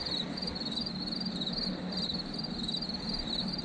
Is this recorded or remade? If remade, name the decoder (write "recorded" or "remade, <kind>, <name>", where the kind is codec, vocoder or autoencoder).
recorded